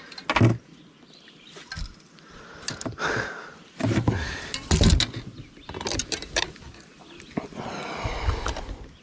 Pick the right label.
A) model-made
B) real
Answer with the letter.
B